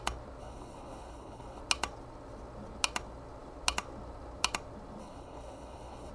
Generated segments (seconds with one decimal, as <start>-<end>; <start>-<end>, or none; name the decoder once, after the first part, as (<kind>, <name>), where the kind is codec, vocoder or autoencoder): 0.4-1.6 (codec, HILCodec); 5.0-6.1